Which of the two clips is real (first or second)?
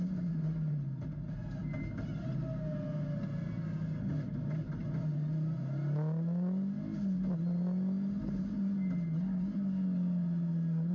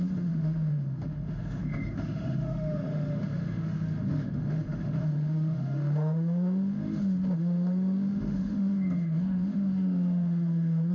first